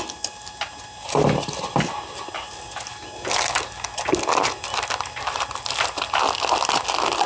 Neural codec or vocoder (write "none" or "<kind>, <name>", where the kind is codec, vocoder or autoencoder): none